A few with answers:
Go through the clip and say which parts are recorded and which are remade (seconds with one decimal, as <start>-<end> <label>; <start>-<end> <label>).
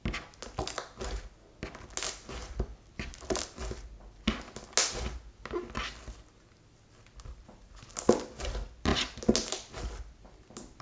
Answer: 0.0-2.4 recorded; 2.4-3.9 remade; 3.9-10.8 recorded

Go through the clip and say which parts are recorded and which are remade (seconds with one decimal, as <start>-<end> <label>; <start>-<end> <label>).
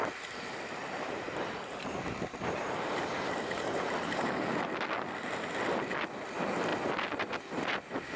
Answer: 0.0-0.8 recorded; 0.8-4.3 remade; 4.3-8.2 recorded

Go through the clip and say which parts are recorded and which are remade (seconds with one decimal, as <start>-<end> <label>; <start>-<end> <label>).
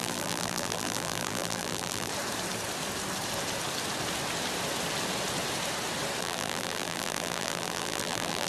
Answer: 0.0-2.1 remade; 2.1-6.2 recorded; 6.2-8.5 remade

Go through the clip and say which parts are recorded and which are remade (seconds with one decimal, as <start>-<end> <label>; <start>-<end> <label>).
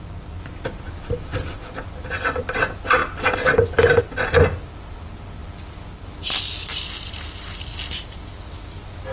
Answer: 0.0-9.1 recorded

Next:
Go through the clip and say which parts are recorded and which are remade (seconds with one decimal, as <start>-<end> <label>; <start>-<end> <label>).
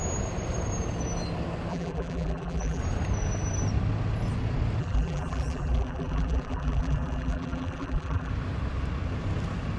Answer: 0.0-1.7 recorded; 1.7-2.8 remade; 2.8-4.8 recorded; 4.8-8.3 remade; 8.3-9.8 recorded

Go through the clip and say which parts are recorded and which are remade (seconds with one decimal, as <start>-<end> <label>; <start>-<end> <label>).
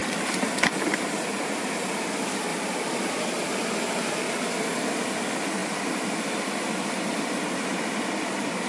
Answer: 0.0-1.1 remade; 1.1-2.5 recorded; 2.5-3.5 remade; 3.5-8.7 recorded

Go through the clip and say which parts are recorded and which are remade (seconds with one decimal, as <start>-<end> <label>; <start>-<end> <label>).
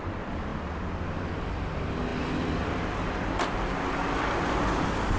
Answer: 0.0-5.2 recorded